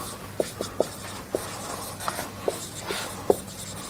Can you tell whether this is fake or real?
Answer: real